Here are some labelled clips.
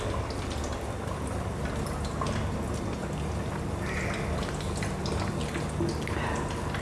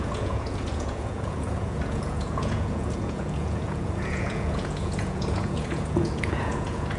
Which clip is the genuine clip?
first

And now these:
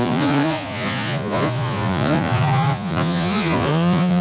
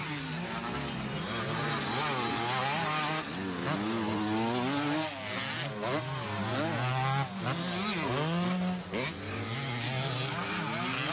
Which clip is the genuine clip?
second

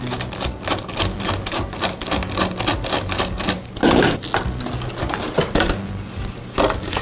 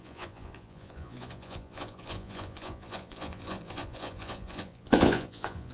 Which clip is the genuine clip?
first